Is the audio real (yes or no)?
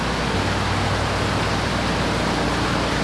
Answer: yes